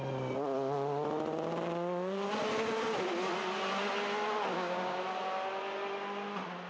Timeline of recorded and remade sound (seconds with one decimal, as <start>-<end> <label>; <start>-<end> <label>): 0.0-4.5 recorded; 4.5-5.0 remade; 5.0-6.7 recorded